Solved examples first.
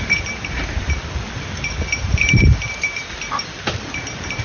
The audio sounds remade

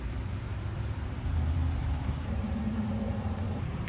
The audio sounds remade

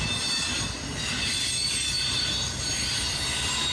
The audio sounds recorded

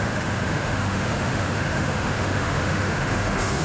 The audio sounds remade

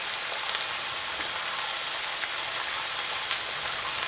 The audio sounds recorded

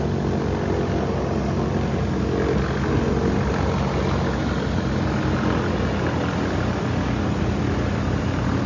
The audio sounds recorded